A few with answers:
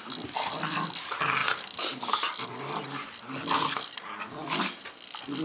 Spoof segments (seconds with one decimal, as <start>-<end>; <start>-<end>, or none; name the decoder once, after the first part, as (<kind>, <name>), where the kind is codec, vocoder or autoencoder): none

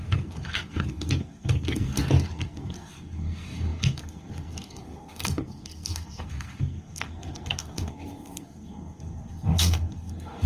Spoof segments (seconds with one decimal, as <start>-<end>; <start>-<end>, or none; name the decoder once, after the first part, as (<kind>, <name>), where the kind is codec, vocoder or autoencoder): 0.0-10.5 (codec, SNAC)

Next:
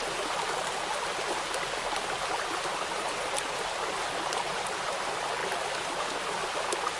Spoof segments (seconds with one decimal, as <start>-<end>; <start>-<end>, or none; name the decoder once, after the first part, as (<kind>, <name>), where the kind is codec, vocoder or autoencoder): none

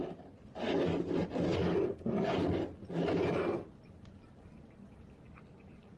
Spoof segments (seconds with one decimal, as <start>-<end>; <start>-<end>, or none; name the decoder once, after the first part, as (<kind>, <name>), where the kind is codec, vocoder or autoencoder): none

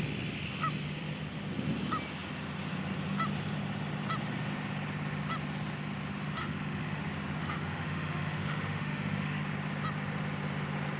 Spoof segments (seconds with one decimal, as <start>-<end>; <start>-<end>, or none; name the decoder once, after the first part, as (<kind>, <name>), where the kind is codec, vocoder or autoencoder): 6.4-7.0 (autoencoder, DAC-VAE); 7.4-9.4

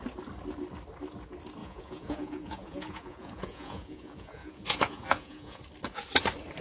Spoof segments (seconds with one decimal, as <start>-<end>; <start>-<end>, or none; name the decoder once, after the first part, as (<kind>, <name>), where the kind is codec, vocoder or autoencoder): 1.6-5.6 (vocoder, Vocos)

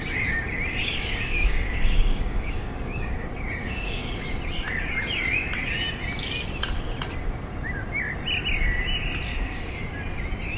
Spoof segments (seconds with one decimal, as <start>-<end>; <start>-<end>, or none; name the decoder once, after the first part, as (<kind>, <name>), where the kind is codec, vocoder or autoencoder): 0.8-3.2 (codec, DAC); 3.6-4.1; 9.3-9.8

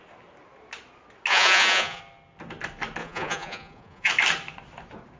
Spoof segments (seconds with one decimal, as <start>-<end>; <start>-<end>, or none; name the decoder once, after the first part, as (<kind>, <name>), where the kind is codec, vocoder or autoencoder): 1.3-2.0 (vocoder, Vocos); 3.0-4.1